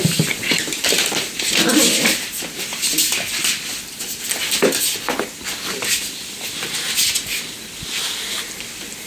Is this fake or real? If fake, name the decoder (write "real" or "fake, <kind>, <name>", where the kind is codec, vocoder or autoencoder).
real